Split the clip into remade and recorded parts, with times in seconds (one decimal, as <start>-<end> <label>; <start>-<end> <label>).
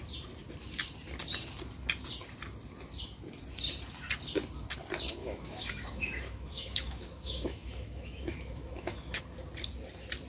0.0-5.2 recorded; 5.2-9.2 remade; 9.2-10.3 recorded